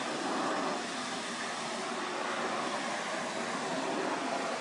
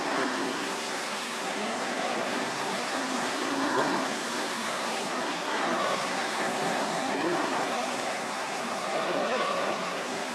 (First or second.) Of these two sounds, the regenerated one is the second